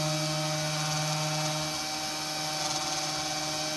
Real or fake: real